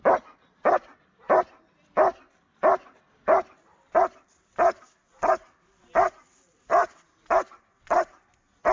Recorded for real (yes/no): yes